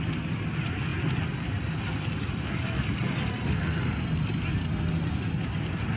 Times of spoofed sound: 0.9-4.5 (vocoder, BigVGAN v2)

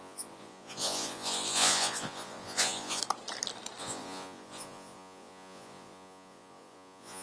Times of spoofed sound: 0.0-3.0 (vocoder, Vocos); 3.8-7.2